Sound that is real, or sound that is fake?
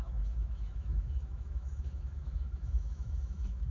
fake